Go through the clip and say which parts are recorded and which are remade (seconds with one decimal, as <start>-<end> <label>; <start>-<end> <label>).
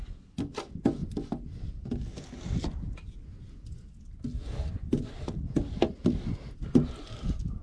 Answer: 0.0-7.6 recorded